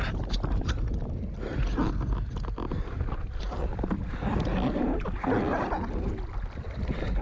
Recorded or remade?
recorded